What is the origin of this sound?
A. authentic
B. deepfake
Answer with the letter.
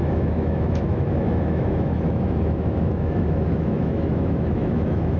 B